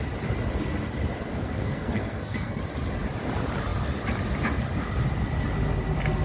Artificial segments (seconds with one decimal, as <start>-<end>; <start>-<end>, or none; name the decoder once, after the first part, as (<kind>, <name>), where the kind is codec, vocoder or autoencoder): 1.3-2.6 (codec, SNAC)